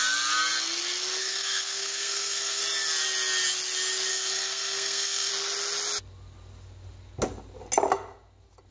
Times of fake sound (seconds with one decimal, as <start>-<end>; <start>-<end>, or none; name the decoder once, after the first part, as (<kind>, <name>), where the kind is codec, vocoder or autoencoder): 1.2-2.6 (codec, SNAC); 4.1-5.3